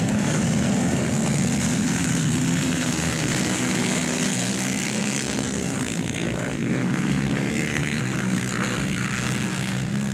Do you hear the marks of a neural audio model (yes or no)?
yes